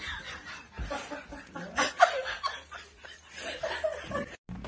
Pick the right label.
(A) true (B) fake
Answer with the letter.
A